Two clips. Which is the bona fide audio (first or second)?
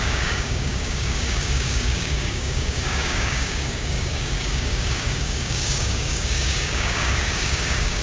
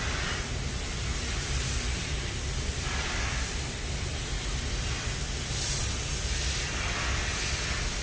second